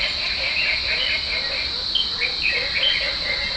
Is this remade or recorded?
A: recorded